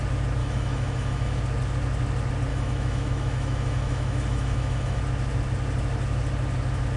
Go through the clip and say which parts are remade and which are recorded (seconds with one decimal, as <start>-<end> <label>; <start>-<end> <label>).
0.0-0.4 recorded; 0.4-1.4 remade; 1.4-2.5 recorded; 2.5-5.0 remade; 5.0-7.0 recorded